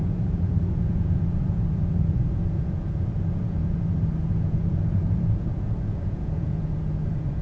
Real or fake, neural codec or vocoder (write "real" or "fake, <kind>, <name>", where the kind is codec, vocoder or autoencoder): fake, vocoder, Vocos